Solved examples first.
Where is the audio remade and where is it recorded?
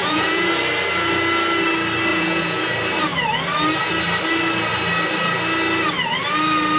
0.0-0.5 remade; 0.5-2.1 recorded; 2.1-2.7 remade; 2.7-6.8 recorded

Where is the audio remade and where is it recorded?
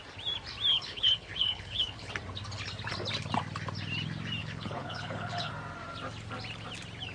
0.0-0.7 recorded; 0.7-2.1 remade; 2.1-4.4 recorded; 4.4-5.5 remade; 5.5-7.1 recorded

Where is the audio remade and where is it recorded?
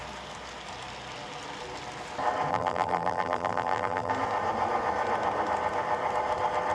0.0-2.5 recorded; 2.5-4.1 remade; 4.1-6.7 recorded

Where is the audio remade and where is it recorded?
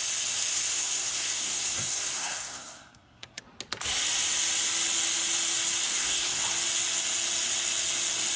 0.0-0.5 recorded; 0.5-3.4 remade; 3.4-5.8 recorded; 5.8-6.4 remade; 6.4-8.4 recorded